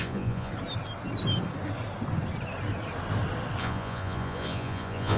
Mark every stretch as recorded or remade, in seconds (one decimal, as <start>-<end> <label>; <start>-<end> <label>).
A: 0.0-0.5 remade; 0.5-3.6 recorded; 3.6-5.2 remade